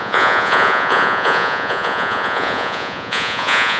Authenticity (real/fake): fake